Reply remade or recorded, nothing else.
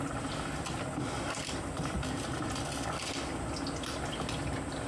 recorded